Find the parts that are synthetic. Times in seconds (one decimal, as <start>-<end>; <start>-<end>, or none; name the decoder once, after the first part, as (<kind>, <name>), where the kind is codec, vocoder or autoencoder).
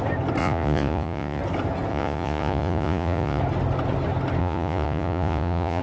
0.4-1.4 (vocoder, Vocos); 1.9-3.4; 4.4-5.8